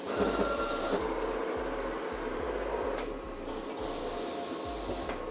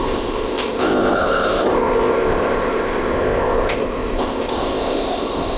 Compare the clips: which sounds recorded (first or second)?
first